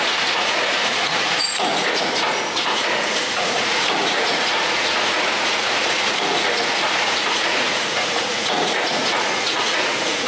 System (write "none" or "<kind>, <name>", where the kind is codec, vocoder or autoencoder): vocoder, Vocos